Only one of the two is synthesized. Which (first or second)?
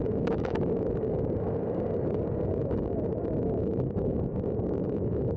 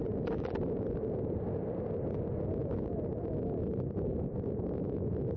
first